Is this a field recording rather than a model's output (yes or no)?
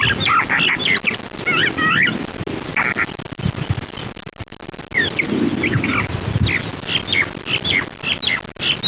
yes